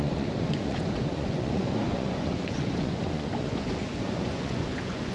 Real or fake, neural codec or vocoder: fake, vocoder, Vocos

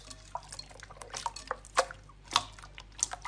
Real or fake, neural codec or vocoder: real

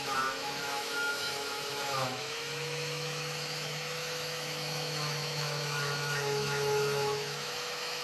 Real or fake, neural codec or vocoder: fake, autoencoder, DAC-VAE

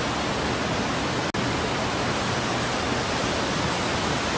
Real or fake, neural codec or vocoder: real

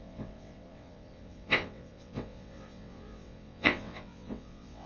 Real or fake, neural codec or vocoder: fake, vocoder, WaveNeXt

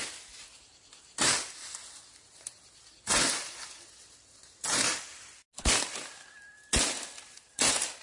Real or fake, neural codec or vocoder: real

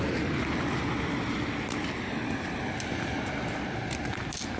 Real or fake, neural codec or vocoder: real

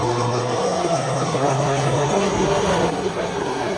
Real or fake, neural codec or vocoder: fake, codec, SNAC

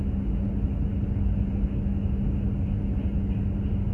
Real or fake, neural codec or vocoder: real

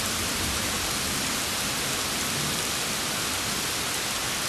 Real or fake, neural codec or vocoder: real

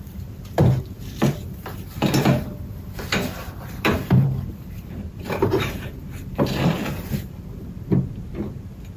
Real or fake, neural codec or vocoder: fake, vocoder, BigVGAN v2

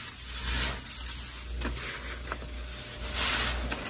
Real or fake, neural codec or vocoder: real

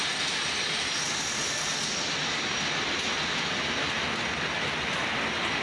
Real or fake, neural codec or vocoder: real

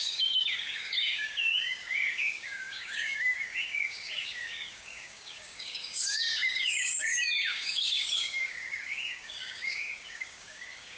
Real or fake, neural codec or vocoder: fake, codec, DAC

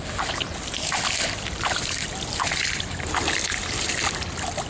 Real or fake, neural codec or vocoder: real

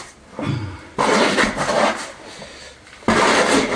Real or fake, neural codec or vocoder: real